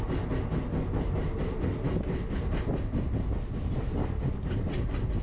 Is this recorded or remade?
recorded